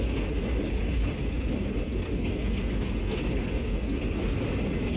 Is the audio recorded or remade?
recorded